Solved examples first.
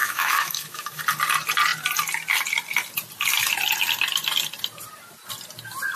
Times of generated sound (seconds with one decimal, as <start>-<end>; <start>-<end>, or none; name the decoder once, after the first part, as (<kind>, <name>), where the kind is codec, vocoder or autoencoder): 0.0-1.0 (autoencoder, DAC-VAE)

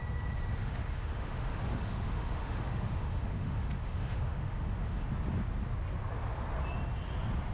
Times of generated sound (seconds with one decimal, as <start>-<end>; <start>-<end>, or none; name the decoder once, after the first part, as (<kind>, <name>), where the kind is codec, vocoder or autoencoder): 0.6-5.1 (autoencoder, DAC-VAE)

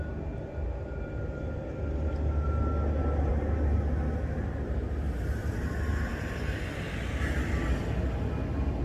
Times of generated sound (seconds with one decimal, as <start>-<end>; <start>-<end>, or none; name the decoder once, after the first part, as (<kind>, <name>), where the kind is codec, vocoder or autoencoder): none

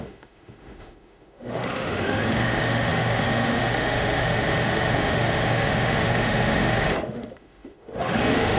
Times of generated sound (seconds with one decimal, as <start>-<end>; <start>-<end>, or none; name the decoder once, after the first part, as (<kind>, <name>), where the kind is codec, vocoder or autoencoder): 0.0-8.6 (autoencoder, DAC-VAE)

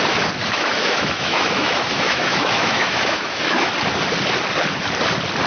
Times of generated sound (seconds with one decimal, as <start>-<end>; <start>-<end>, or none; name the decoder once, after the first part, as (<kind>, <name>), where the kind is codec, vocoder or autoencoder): 0.4-3.7 (autoencoder, DAC-VAE)